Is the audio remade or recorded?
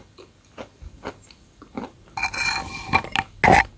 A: recorded